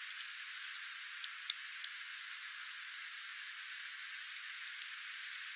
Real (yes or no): yes